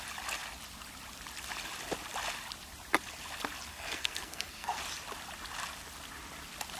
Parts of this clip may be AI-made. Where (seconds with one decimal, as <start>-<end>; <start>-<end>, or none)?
3.7-4.8

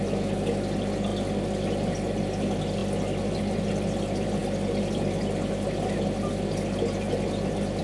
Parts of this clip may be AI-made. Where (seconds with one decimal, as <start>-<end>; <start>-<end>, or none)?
none

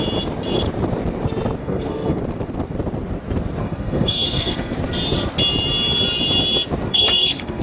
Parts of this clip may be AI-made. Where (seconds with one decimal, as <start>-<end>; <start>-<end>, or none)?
1.6-2.2; 3.6-4.7; 6.9-7.6

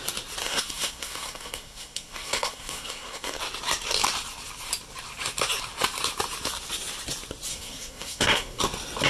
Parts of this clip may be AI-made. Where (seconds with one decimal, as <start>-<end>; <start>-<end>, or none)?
0.4-3.4; 7.5-8.6